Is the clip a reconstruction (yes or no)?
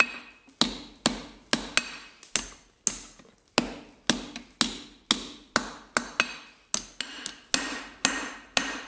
no